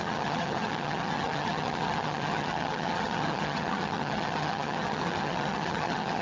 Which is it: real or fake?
fake